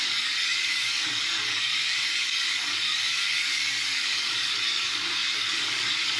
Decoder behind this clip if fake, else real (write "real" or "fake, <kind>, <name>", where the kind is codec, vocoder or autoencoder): fake, codec, DAC